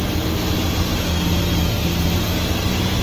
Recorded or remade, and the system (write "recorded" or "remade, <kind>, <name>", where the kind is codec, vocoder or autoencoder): recorded